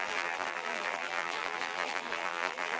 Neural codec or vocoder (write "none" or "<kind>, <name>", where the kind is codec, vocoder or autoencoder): vocoder, BigVGAN v2